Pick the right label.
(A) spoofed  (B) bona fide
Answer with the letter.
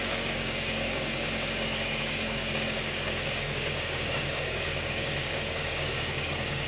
A